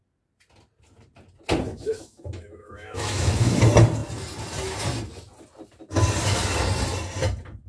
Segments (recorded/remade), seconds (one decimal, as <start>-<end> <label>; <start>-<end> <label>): 0.0-1.7 recorded; 1.7-3.6 remade; 3.6-7.7 recorded